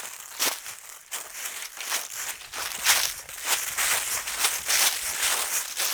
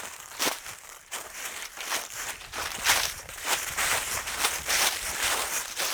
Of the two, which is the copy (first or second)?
second